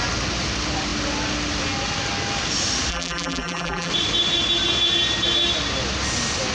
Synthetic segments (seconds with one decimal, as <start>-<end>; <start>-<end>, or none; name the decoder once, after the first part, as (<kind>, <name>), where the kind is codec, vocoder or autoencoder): 2.9-3.9 (vocoder, BigVGAN v2)